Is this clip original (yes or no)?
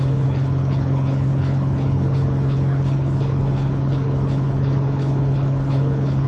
no